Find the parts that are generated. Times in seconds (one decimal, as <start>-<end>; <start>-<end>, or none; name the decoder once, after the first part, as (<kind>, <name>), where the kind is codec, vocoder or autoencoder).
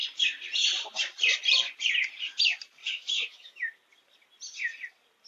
2.8-3.7 (autoencoder, DAC-VAE)